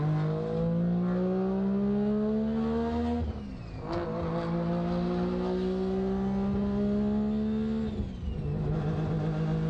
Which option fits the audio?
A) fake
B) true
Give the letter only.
B